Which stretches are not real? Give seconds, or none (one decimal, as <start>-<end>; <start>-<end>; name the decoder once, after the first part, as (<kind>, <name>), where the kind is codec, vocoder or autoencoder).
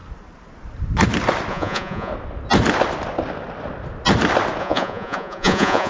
1.5-2.1 (vocoder, Vocos); 4.6-5.9